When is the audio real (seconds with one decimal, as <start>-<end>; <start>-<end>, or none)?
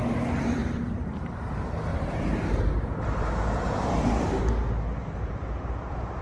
0.0-0.6; 1.4-1.9; 4.4-5.0